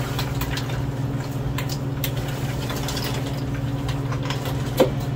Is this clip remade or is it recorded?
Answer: recorded